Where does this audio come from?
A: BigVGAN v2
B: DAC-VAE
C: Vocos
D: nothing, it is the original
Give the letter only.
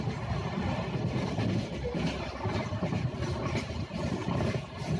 D